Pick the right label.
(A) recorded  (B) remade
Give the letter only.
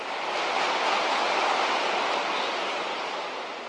A